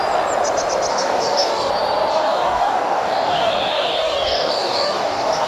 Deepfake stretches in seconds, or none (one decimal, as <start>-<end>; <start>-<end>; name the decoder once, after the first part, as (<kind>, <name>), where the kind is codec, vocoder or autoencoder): 0.9-1.7 (codec, DAC); 2.1-5.5